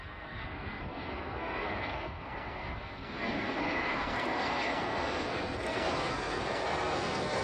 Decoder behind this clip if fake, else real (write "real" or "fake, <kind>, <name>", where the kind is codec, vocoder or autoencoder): fake, codec, SNAC